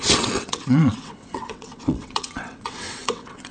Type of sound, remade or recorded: remade